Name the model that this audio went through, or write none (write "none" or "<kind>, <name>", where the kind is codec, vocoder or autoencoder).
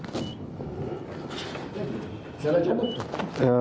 none